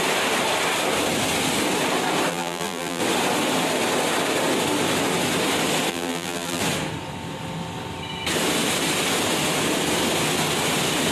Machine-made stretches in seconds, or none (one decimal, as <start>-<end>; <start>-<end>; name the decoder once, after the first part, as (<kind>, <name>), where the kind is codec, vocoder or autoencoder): 2.3-3.0 (vocoder, BigVGAN v2); 5.9-6.6